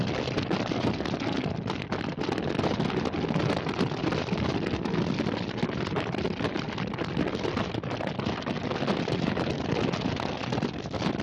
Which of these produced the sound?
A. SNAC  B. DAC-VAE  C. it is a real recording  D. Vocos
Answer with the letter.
C